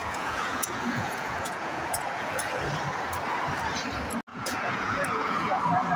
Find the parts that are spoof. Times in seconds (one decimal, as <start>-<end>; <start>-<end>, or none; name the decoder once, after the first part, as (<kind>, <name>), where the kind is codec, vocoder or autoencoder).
0.0-2.6 (vocoder, Vocos); 4.3-5.6